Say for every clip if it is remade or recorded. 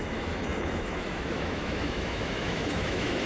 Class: remade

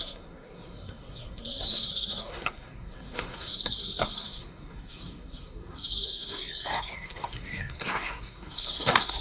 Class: remade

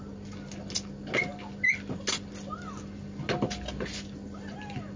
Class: recorded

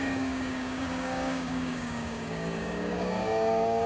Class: remade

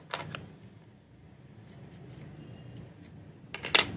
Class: recorded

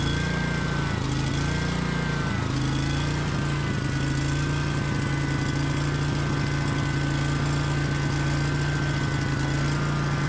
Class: recorded